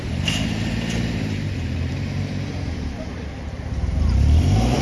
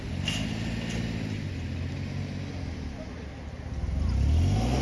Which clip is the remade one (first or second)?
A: first